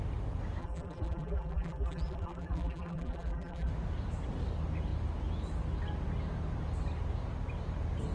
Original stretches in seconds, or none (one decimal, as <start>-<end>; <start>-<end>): 0.0-0.6; 3.7-8.1